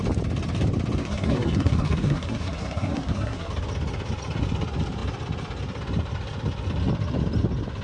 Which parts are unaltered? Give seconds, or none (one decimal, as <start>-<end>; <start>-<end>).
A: 0.0-1.0; 3.5-7.8